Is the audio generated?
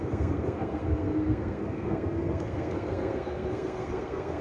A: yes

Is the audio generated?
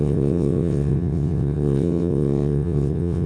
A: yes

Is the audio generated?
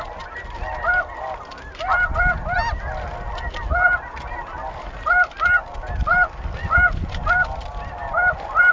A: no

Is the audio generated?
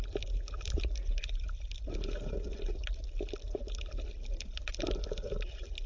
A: no